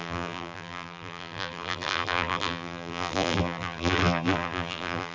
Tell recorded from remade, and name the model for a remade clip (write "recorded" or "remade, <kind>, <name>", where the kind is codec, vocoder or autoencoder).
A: remade, vocoder, BigVGAN v2